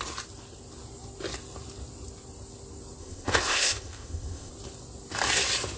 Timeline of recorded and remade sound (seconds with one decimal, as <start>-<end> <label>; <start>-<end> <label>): 0.0-3.0 recorded; 3.0-4.5 remade; 4.5-5.8 recorded